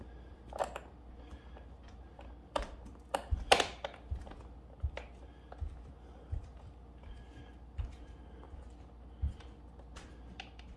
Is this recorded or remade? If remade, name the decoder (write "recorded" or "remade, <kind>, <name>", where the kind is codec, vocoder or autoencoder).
recorded